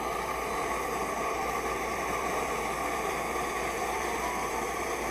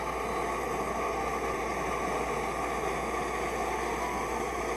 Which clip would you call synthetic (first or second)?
first